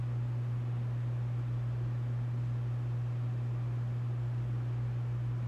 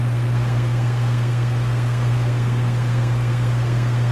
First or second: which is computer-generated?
second